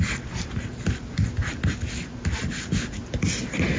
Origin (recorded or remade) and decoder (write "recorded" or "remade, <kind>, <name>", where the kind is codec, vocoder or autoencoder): recorded